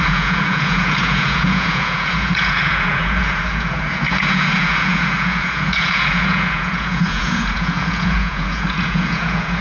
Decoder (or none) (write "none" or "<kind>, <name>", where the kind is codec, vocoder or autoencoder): vocoder, Vocos